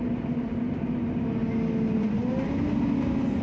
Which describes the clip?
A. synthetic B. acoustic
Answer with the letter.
B